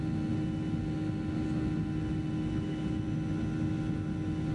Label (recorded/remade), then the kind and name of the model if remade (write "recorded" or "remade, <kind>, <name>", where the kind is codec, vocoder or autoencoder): recorded